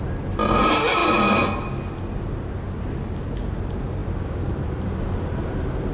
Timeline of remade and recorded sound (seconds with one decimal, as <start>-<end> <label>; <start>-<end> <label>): 0.0-5.9 recorded